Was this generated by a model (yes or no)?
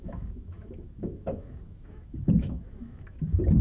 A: yes